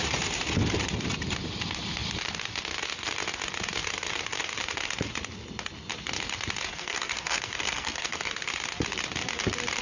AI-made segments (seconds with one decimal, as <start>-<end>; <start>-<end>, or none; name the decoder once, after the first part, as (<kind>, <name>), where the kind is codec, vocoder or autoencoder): 6.7-8.5 (codec, SNAC)